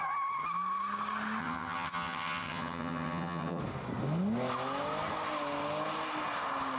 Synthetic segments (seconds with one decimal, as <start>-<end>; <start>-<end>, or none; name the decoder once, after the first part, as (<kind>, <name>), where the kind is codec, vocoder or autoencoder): 1.4-3.6 (vocoder, HiFi-GAN)